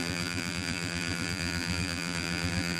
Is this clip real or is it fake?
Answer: fake